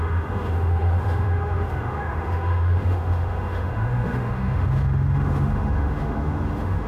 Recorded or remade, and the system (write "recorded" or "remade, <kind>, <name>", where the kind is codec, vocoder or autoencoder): remade, autoencoder, DAC-VAE